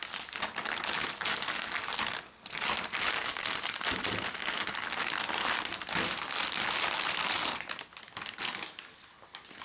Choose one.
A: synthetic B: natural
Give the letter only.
B